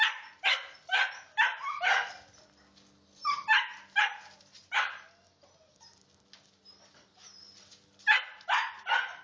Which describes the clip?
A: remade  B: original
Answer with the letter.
B